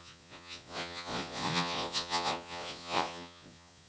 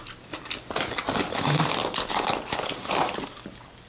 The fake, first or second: first